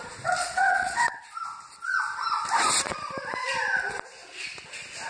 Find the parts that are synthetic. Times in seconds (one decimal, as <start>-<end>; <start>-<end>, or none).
0.4-1.2